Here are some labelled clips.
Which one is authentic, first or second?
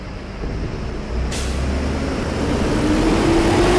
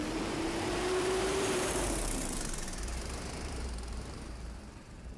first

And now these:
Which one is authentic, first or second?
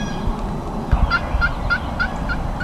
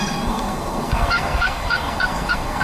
first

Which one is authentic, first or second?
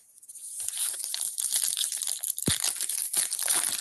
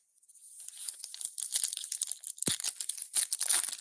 second